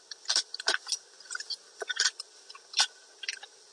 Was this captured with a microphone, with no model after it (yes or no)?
yes